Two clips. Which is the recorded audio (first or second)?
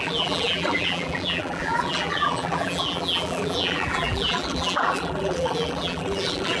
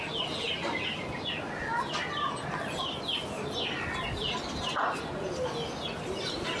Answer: second